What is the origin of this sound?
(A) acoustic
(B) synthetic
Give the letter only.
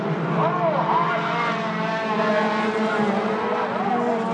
A